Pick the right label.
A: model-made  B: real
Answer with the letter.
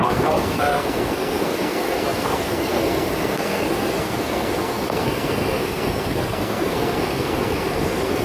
A